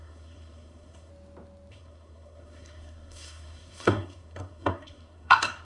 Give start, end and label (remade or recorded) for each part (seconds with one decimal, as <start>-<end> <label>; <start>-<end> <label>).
0.0-1.1 remade; 1.1-1.7 recorded; 1.7-5.6 remade